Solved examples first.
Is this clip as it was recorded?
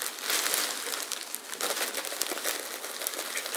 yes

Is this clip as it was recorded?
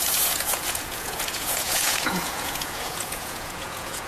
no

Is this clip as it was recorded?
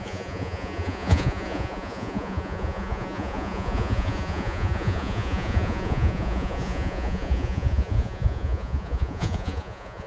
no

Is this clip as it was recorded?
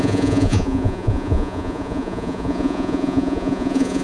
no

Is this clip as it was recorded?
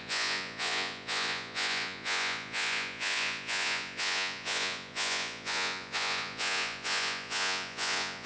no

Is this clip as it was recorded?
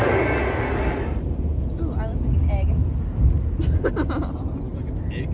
yes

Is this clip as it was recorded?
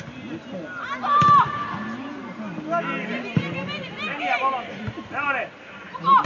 yes